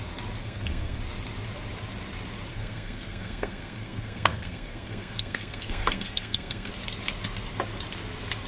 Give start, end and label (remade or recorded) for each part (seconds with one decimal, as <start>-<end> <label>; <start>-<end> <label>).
0.0-0.4 recorded; 0.4-1.0 remade; 1.0-2.5 recorded; 2.5-6.7 remade; 6.7-8.5 recorded